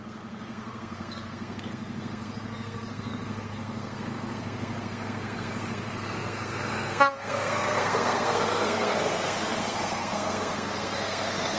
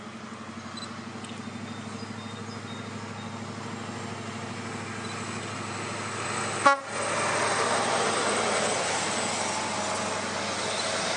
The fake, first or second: first